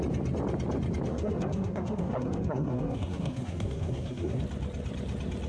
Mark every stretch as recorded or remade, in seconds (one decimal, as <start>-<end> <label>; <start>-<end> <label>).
0.0-1.1 recorded; 1.1-4.4 remade; 4.4-5.5 recorded